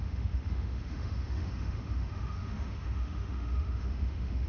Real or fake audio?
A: fake